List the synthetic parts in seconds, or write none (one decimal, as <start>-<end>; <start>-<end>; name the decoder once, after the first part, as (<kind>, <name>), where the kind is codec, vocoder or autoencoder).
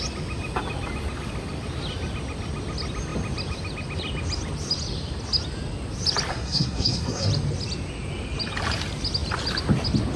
6.3-7.3 (codec, SNAC)